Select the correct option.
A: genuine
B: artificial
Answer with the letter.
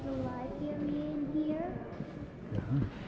A